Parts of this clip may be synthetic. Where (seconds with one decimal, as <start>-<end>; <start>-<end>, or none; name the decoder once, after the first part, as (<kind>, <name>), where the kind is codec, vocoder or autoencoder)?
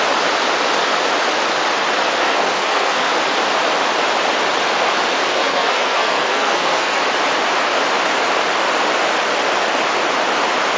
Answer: 2.2-3.1 (codec, SNAC); 5.3-7.0